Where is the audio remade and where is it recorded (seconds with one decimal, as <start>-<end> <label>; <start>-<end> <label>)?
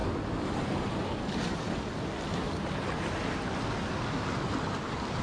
0.0-5.2 recorded